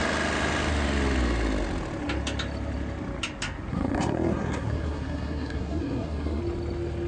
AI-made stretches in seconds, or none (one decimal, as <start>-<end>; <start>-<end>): 3.7-6.4